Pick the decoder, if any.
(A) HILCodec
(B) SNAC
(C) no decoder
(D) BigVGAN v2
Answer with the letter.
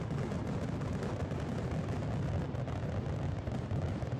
C